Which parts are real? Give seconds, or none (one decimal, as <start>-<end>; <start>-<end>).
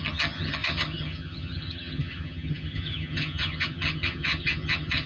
none